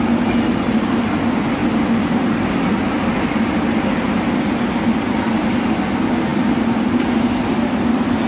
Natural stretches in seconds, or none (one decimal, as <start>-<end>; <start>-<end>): 0.0-6.3; 7.4-8.3

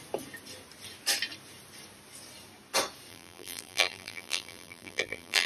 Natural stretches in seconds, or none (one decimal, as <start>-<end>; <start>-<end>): 0.0-3.1

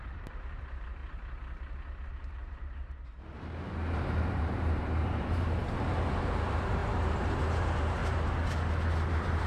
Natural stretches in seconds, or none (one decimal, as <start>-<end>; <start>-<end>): 1.0-2.1; 8.0-9.1

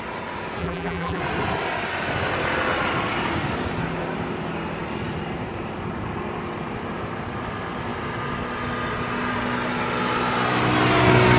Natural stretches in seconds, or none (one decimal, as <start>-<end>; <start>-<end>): 0.0-0.6; 1.2-11.4

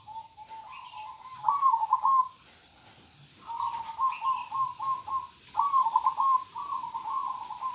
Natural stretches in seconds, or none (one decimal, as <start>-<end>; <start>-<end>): 0.0-7.2